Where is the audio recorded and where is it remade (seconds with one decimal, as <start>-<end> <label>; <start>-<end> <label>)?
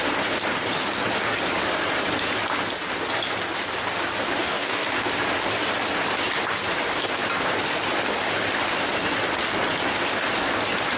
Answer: 0.0-4.4 recorded; 4.4-4.9 remade; 4.9-11.0 recorded